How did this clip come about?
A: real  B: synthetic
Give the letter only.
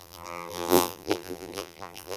B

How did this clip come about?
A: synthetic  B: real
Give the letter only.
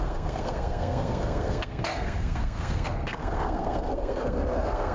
A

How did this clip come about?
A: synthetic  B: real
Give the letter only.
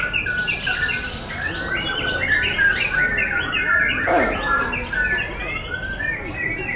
B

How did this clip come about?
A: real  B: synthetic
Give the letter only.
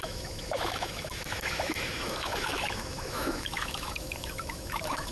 B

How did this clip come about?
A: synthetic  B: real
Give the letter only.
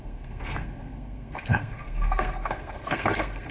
A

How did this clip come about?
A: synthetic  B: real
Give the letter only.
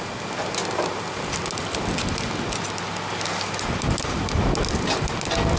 B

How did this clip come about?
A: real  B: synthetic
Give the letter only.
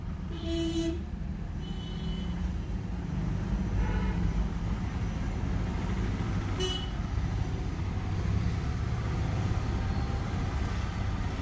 A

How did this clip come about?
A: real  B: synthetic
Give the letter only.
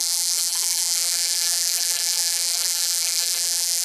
B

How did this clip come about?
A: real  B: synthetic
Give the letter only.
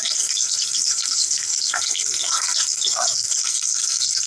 B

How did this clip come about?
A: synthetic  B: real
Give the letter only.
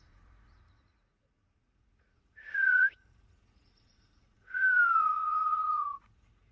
A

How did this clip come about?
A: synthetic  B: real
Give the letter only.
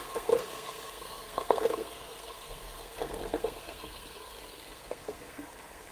A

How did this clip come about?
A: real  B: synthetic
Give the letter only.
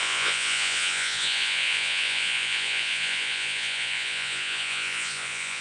B